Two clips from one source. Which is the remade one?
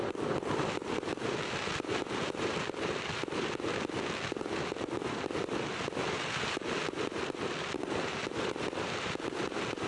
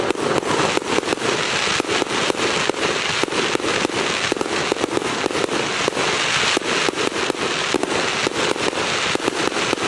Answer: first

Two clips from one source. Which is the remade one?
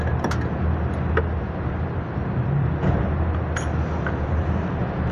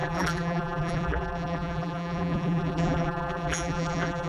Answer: second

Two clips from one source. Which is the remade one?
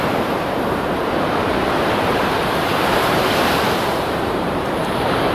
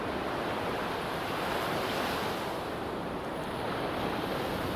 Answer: first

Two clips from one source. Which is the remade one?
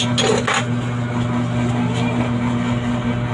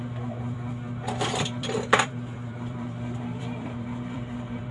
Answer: second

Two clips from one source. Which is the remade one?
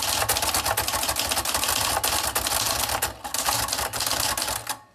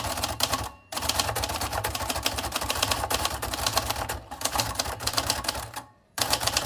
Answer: second